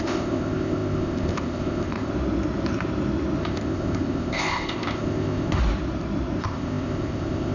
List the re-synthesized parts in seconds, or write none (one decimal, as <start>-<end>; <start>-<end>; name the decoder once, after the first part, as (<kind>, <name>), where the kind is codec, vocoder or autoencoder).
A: 0.0-2.1 (codec, ZipCodec); 3.4-5.6; 6.4-7.5